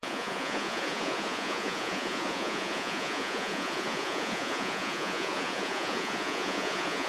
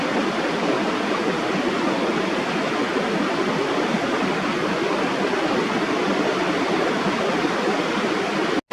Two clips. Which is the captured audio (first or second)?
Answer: second